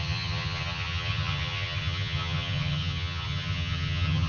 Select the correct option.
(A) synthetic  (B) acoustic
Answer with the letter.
A